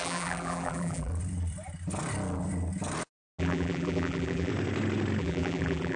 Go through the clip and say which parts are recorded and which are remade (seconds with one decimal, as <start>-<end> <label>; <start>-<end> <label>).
0.0-1.1 remade; 1.1-3.4 recorded; 3.4-4.5 remade; 4.5-5.2 recorded; 5.2-6.0 remade